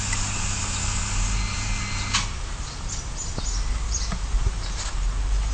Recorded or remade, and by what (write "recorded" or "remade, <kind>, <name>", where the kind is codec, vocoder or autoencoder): recorded